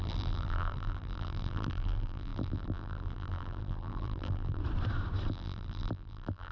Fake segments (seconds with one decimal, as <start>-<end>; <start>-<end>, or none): 0.0-4.6; 5.3-6.5